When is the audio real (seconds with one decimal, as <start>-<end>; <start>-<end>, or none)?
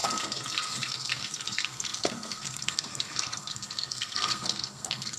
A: none